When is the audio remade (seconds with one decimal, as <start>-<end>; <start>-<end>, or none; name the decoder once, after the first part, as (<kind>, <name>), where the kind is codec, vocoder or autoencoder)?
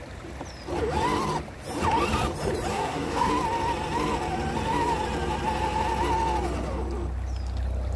2.7-3.3 (codec, SNAC)